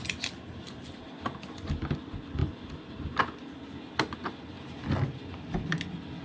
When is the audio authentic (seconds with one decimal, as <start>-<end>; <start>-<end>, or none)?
0.0-6.2